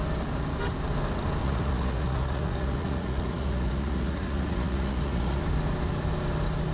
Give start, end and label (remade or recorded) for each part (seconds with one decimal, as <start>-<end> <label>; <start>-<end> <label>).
0.0-1.4 recorded; 1.4-5.4 remade; 5.4-6.7 recorded